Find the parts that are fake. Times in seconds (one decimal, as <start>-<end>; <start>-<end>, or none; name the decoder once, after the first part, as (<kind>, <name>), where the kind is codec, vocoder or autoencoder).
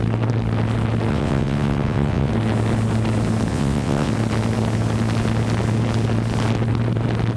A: 1.1-2.3 (vocoder, WaveNeXt); 3.5-4.1